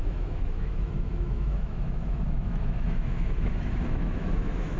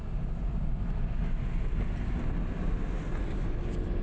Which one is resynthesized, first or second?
first